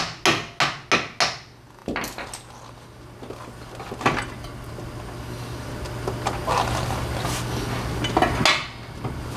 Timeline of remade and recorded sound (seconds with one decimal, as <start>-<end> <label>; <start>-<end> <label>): 0.0-9.4 recorded